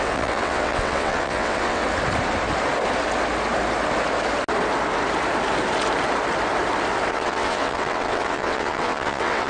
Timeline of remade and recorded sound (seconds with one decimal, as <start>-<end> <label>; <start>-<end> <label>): 0.0-1.8 remade; 1.8-7.1 recorded; 7.1-9.5 remade